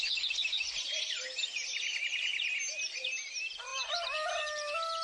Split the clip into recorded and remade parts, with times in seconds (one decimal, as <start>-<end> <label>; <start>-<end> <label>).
0.0-5.0 recorded